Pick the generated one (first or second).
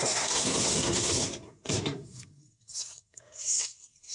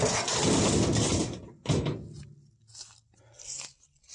first